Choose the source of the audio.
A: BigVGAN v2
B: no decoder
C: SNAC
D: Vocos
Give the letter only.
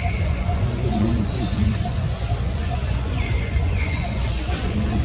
D